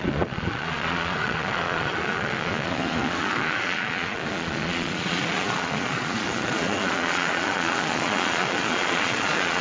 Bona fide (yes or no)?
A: no